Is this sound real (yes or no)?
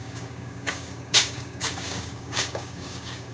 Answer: no